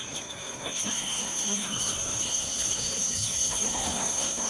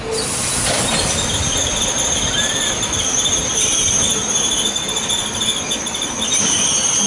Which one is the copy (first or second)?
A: first